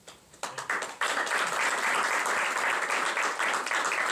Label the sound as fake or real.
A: real